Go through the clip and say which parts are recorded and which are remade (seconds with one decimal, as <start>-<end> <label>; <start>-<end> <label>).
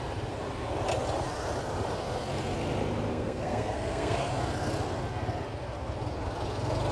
0.0-3.1 recorded; 3.1-4.3 remade; 4.3-6.9 recorded